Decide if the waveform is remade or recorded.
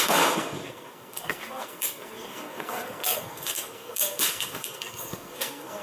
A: remade